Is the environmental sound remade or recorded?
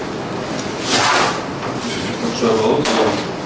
recorded